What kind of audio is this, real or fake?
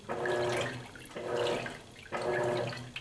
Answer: real